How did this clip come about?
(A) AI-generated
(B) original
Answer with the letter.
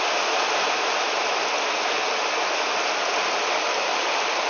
B